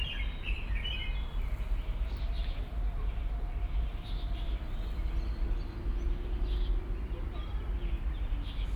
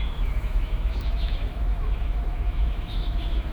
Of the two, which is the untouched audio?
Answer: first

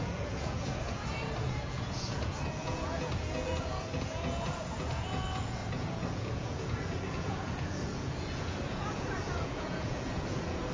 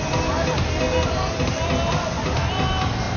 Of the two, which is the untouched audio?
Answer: second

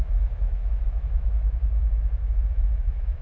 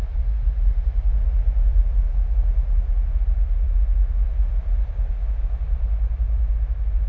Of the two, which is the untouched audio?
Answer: second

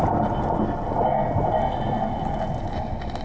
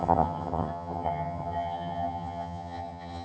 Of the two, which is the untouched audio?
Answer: first